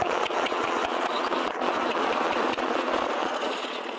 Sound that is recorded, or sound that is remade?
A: remade